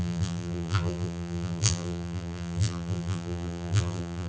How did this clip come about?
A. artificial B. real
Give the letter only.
A